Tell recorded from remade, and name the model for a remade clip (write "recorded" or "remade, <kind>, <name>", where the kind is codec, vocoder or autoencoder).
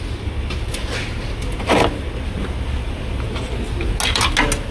recorded